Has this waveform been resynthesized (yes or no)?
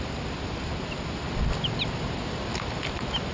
no